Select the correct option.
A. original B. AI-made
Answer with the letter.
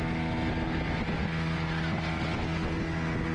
A